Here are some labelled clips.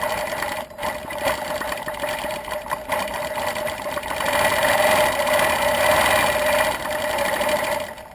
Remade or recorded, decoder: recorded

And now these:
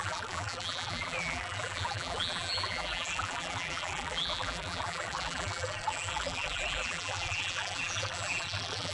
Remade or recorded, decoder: remade, vocoder, BigVGAN v2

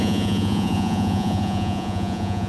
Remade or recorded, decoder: remade, vocoder, Vocos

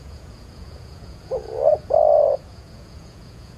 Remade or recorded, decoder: remade, vocoder, Vocos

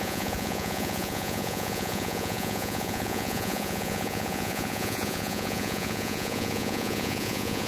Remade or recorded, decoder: remade, vocoder, Vocos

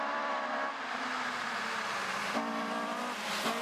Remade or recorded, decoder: recorded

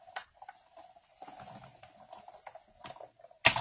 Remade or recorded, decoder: recorded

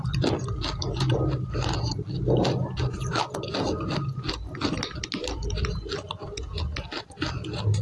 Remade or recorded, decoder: recorded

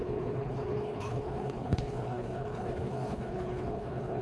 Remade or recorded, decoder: remade, codec, HILCodec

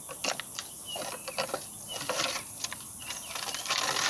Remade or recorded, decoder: recorded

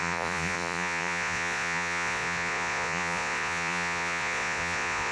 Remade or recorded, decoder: remade, vocoder, Vocos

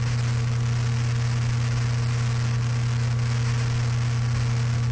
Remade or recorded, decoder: recorded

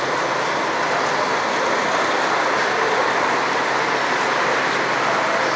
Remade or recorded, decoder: recorded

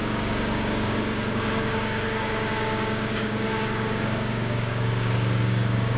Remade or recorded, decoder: remade, codec, DAC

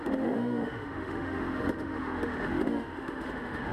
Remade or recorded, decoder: remade, autoencoder, DAC-VAE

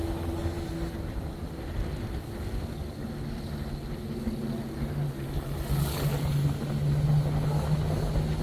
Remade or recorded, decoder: recorded